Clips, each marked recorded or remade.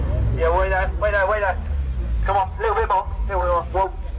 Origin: recorded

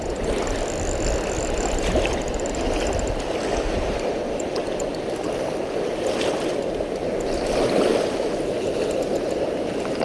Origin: recorded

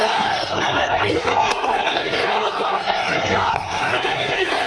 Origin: remade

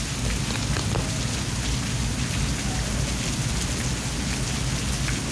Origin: recorded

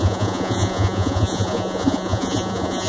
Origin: remade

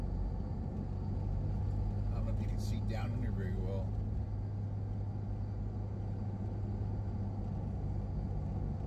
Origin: recorded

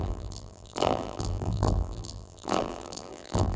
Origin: remade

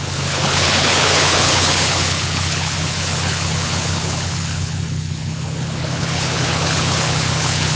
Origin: remade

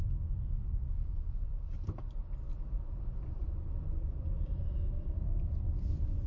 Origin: remade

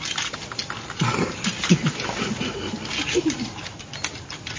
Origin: recorded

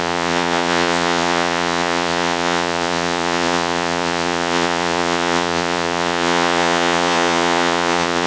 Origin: remade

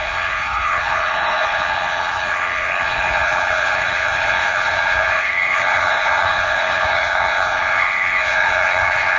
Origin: remade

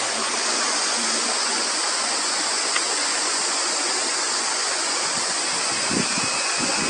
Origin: remade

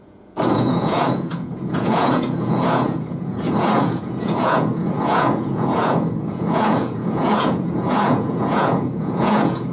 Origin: remade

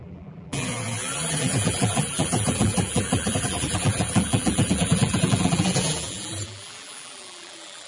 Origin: remade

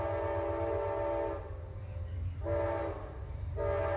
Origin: recorded